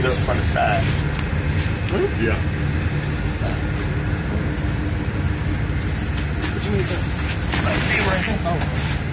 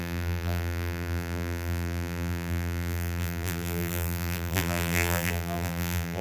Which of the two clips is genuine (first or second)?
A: first